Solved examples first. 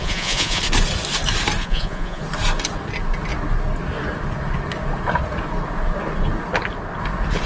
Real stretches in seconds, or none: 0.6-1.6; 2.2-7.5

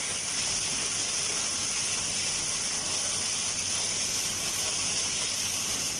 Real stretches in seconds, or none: 1.0-4.6

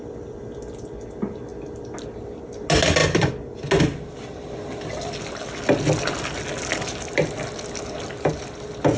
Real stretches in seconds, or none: 0.0-9.0

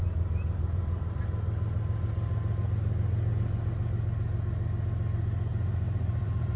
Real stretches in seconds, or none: 1.2-5.5

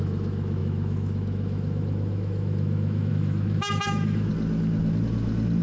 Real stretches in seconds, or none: 4.3-5.6